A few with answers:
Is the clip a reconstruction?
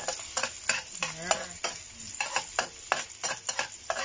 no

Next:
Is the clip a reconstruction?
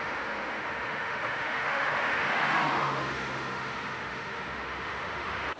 yes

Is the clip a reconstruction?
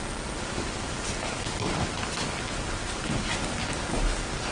no